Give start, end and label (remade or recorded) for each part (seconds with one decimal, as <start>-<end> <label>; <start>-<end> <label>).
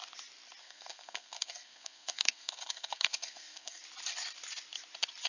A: 0.0-0.6 recorded; 0.6-3.8 remade; 3.8-5.3 recorded